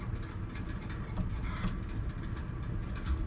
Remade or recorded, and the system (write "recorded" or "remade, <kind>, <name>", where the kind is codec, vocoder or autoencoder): recorded